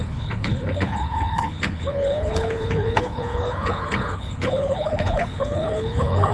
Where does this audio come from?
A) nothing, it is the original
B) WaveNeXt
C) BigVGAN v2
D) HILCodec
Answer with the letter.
D